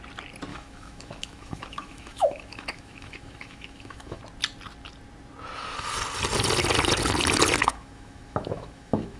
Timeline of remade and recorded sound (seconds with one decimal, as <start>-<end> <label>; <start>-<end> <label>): 0.0-0.5 recorded; 0.5-4.2 remade; 4.2-7.6 recorded; 7.6-9.2 remade